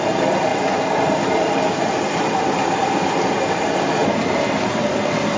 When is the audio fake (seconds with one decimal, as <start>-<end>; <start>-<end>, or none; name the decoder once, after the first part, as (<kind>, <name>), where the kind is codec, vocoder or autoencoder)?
0.5-3.6 (vocoder, BigVGAN v2); 4.0-4.7